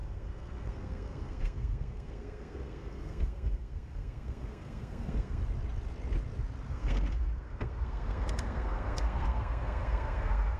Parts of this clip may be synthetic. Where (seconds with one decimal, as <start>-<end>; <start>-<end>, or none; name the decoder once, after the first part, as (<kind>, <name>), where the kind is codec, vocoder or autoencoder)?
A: 0.0-5.4 (codec, SNAC); 6.7-10.6